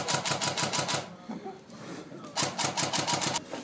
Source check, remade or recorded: recorded